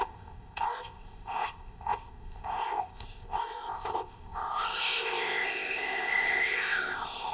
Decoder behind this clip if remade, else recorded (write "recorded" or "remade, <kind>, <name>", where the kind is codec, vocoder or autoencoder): remade, codec, ZipCodec